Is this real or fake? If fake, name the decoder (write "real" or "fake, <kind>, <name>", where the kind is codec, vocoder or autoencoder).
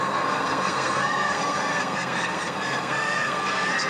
fake, codec, SNAC